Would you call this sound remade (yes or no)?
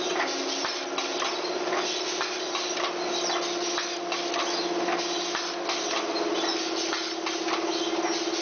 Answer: no